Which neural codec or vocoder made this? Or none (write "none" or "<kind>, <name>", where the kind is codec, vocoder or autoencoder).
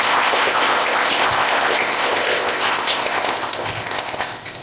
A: codec, ZipCodec